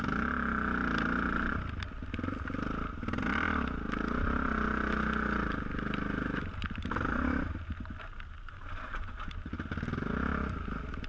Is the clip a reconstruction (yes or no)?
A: no